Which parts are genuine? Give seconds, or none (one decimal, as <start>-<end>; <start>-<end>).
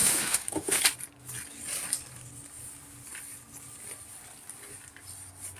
0.8-5.6